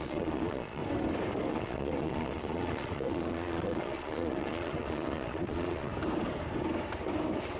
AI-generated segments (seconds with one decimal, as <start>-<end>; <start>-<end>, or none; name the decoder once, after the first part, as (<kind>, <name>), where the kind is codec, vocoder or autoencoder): 0.0-0.8 (vocoder, Vocos); 1.5-5.9